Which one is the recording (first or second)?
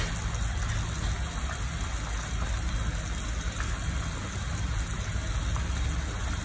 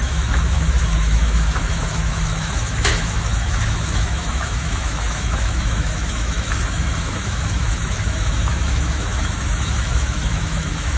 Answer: first